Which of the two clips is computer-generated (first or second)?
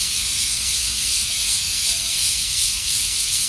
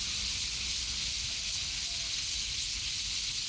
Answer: first